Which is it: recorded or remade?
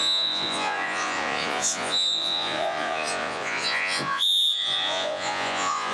remade